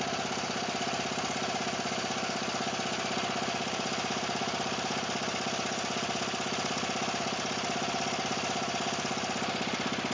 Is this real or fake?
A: real